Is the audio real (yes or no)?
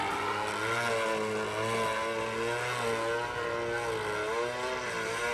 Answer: yes